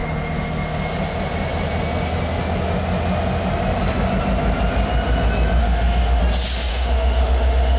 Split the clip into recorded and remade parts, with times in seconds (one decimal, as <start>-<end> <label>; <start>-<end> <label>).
0.0-5.6 recorded; 5.6-6.2 remade; 6.2-6.7 recorded; 6.7-7.8 remade